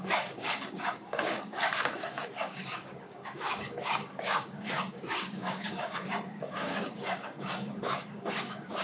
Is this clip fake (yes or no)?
yes